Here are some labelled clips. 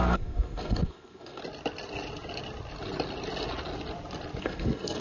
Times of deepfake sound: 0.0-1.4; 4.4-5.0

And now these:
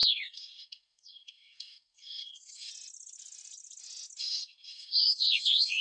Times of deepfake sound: 0.0-2.7; 4.2-5.8

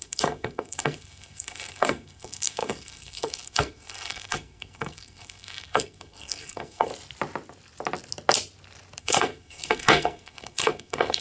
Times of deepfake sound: 0.0-6.9; 9.0-11.2